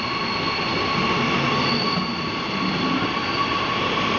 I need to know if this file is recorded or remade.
recorded